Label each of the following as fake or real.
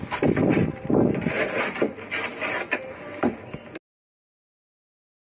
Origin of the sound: real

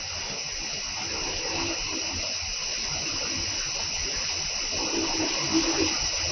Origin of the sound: real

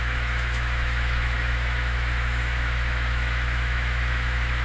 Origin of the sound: fake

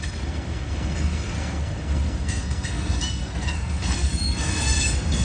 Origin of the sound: fake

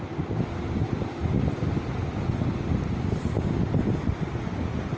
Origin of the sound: real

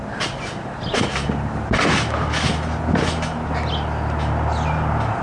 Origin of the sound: real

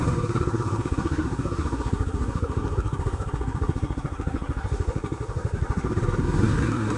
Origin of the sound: fake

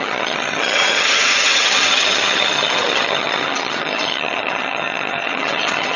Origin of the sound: fake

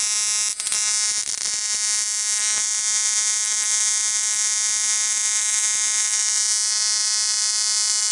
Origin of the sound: real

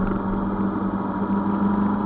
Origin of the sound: real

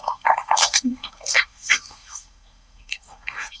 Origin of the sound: fake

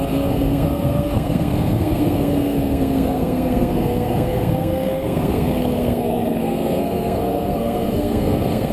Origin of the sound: fake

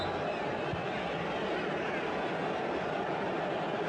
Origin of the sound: real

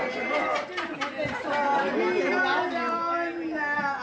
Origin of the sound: real